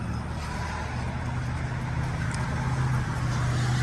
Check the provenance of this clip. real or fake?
real